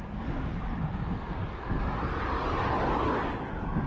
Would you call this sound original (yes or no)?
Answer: yes